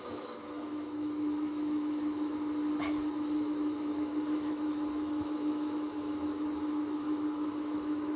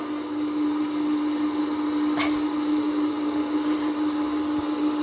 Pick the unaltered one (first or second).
second